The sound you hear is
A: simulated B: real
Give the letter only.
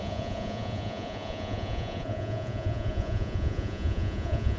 A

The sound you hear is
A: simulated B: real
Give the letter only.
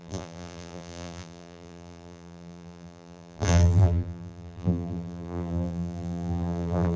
A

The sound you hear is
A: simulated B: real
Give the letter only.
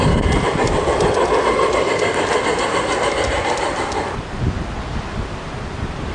A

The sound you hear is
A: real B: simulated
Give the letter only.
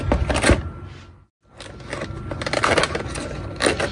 A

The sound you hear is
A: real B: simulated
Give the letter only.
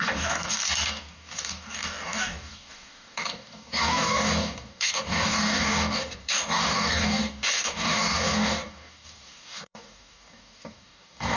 B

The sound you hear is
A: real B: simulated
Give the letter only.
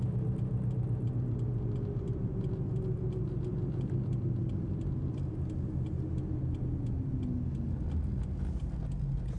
A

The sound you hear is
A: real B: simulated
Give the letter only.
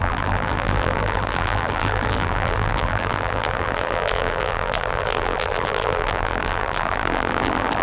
B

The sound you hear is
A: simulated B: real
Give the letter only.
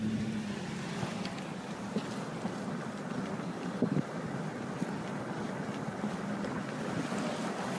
B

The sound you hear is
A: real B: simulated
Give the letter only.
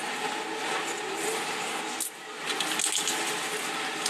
A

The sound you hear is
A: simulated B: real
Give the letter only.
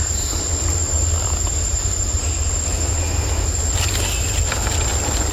B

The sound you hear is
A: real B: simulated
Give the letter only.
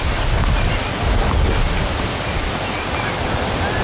A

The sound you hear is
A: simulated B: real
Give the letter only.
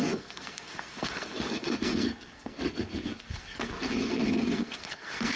A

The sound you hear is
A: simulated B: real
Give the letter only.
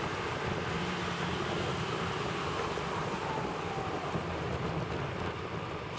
B